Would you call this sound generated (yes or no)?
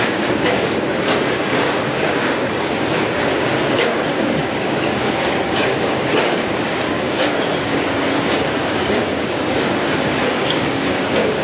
yes